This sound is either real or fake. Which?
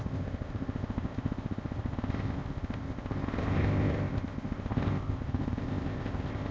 fake